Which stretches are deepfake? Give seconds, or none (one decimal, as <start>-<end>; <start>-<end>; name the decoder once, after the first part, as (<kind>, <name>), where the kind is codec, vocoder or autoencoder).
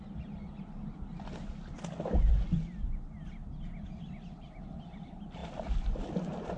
none